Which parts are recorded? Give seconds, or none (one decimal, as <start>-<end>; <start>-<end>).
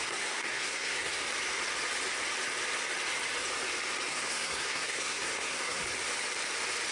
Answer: 1.2-4.1; 5.8-6.9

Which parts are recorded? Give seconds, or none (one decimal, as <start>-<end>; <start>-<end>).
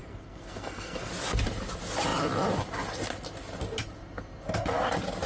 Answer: 1.1-5.3